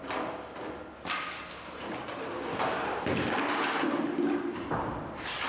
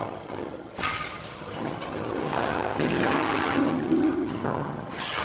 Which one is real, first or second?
first